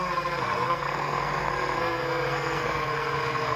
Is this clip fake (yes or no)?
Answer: yes